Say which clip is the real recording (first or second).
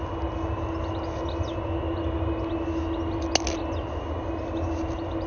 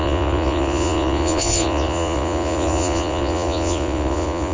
first